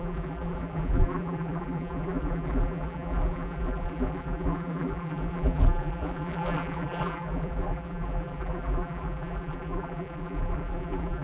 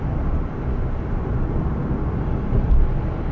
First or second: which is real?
second